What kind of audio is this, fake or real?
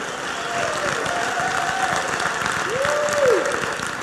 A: real